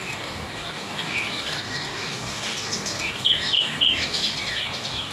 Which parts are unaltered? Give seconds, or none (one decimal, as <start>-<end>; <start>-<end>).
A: none